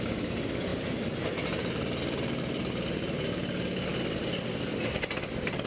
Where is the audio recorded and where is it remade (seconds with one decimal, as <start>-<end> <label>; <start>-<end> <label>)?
0.0-5.7 recorded